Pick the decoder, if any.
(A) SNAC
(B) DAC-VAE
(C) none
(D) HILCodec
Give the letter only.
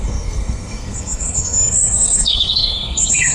A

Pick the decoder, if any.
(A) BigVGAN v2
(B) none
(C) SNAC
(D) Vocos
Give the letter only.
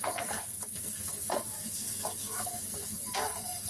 C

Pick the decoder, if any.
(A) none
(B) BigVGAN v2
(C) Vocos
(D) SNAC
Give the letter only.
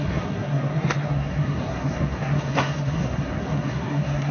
D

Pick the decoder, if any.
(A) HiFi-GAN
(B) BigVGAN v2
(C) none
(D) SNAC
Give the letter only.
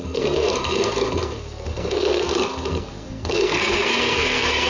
D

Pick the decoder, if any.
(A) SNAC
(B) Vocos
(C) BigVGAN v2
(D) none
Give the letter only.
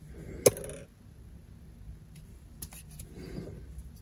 D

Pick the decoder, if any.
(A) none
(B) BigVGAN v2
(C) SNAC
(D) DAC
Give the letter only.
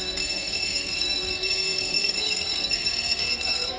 C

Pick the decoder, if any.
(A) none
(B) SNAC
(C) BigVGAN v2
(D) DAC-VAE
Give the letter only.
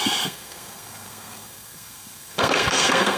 B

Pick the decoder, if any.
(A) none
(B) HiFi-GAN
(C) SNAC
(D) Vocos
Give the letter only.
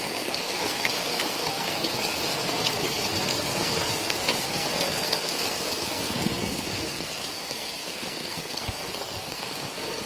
C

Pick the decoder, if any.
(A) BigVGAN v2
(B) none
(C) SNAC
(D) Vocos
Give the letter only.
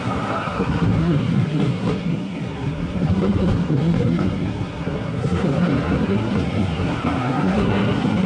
C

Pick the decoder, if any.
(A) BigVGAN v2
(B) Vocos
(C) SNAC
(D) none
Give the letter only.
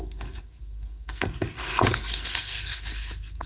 C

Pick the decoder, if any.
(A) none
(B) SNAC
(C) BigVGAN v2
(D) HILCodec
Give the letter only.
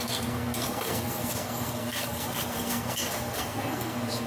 B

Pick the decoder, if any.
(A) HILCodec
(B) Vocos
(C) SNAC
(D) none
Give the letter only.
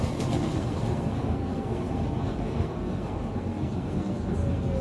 C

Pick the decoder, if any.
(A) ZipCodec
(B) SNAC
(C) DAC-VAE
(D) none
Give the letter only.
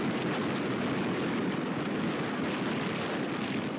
D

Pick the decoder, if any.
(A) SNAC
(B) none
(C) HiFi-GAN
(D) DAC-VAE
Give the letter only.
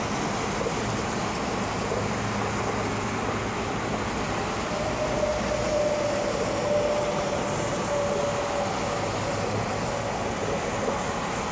B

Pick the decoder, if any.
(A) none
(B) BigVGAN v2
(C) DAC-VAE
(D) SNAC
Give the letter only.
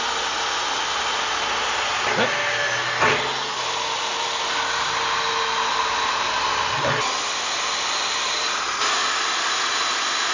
A